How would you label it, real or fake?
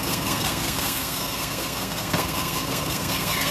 fake